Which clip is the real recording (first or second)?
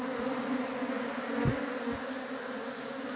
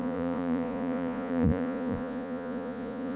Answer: first